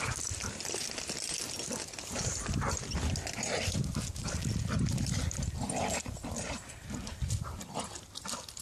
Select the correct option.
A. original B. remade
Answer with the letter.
A